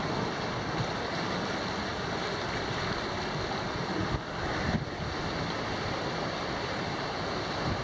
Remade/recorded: recorded